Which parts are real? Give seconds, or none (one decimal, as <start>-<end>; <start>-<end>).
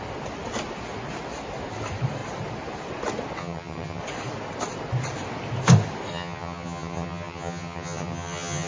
0.0-3.4; 4.0-6.1